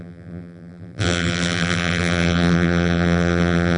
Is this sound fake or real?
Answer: fake